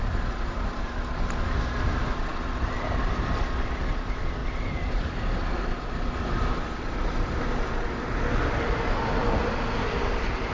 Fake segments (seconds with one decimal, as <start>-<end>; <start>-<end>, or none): none